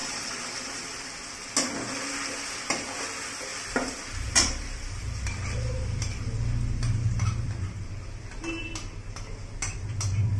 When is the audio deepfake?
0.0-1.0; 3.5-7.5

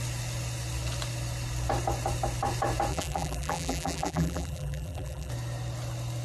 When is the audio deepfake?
2.9-5.3